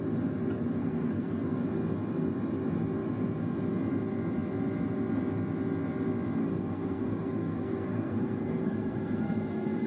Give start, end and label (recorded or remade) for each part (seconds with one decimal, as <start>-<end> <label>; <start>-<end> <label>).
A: 0.0-0.8 recorded; 0.8-1.6 remade; 1.6-6.4 recorded; 6.4-9.9 remade